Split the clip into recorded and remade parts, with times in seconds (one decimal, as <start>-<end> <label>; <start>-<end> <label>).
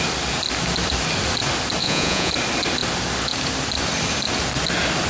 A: 0.0-1.8 recorded; 1.8-2.3 remade; 2.3-5.1 recorded